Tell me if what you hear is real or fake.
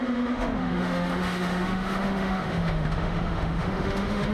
fake